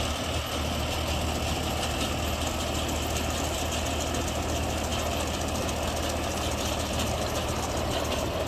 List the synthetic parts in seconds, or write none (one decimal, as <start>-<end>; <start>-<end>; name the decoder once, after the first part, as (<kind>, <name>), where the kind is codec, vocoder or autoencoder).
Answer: none